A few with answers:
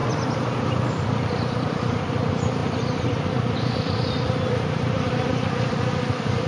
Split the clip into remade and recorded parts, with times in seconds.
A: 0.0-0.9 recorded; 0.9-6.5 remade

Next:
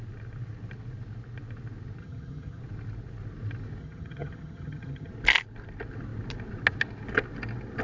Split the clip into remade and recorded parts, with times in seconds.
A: 0.0-2.0 recorded; 2.0-2.6 remade; 2.6-3.8 recorded; 3.8-5.1 remade; 5.1-7.8 recorded

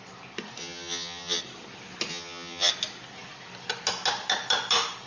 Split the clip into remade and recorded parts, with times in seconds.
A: 0.0-0.6 recorded; 0.6-1.4 remade; 1.4-2.1 recorded; 2.1-2.7 remade; 2.7-5.1 recorded